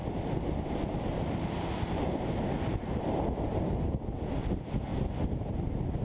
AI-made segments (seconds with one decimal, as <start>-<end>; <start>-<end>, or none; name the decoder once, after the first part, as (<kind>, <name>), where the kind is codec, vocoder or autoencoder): none